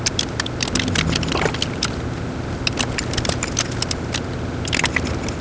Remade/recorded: recorded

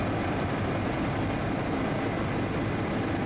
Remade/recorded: recorded